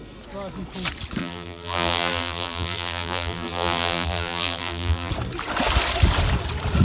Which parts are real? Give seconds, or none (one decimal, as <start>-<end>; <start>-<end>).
0.0-1.2; 5.1-6.8